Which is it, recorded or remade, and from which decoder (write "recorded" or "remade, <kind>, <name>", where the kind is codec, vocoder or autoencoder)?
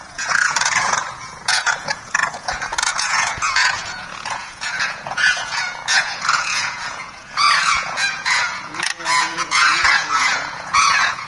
remade, vocoder, Vocos